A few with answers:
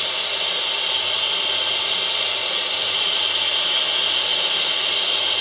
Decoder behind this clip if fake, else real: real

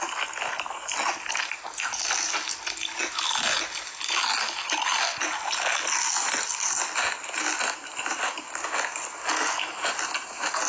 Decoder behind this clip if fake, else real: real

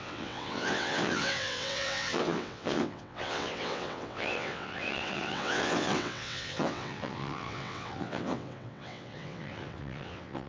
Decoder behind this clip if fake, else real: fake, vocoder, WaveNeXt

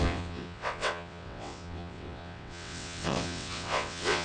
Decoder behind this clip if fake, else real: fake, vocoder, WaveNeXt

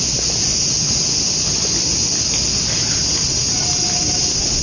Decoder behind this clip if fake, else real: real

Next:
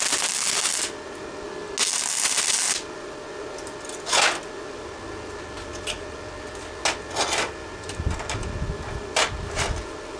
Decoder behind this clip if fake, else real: real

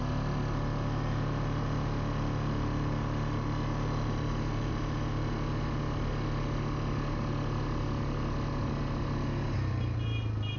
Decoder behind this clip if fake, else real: real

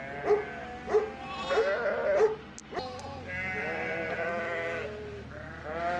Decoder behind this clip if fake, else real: real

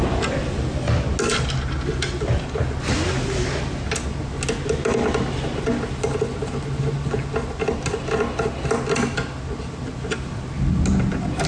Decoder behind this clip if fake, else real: real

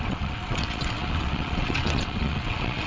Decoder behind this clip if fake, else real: fake, vocoder, WaveNeXt